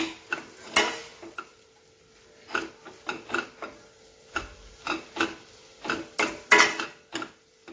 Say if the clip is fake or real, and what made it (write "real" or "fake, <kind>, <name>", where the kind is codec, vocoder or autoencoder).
real